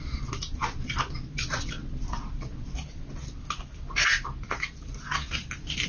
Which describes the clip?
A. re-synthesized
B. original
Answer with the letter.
B